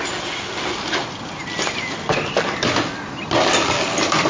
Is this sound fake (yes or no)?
no